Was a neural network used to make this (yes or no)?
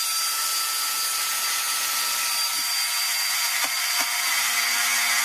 no